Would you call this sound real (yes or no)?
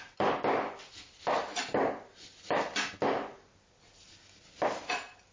yes